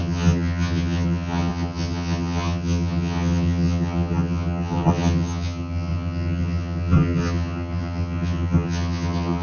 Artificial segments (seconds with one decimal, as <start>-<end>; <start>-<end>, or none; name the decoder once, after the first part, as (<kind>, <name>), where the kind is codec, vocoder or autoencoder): 0.0-9.4 (vocoder, HiFi-GAN)

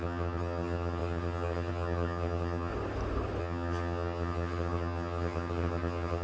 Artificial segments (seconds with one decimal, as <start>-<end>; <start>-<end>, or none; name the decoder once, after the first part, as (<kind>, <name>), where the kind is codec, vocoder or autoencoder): 0.0-2.7 (vocoder, HiFi-GAN); 3.4-6.2

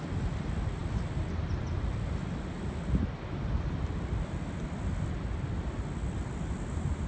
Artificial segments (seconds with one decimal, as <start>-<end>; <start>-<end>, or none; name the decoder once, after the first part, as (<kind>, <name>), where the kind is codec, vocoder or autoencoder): none